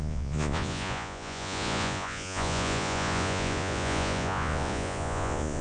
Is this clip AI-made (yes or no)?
yes